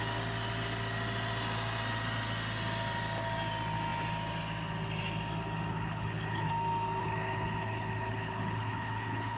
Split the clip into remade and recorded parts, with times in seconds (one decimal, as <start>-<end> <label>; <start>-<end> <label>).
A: 0.0-5.7 recorded; 5.7-6.5 remade; 6.5-7.0 recorded; 7.0-9.4 remade